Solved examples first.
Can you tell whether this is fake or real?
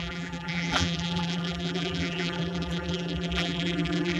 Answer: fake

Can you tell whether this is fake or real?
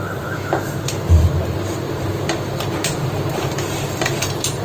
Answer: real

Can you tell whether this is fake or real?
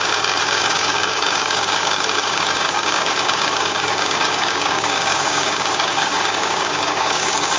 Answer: fake